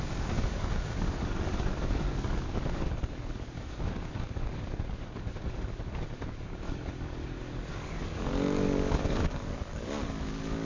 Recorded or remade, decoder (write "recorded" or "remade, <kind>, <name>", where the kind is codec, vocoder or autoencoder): remade, codec, DAC